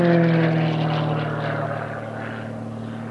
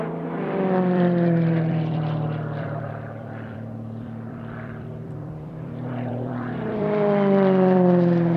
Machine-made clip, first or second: second